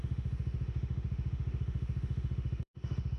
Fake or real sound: fake